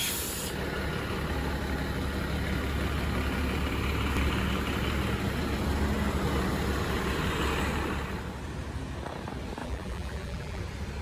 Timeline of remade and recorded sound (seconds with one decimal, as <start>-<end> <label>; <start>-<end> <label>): 0.0-9.6 recorded; 9.6-10.6 remade; 10.6-11.0 recorded